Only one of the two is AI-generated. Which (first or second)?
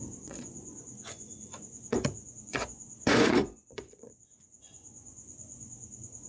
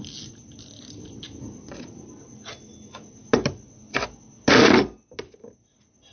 first